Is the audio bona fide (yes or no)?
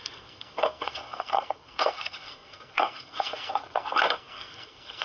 no